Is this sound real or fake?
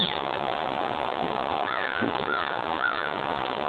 fake